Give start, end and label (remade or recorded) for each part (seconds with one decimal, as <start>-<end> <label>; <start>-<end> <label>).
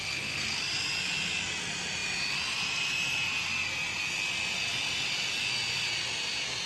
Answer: 0.0-0.6 remade; 0.6-6.7 recorded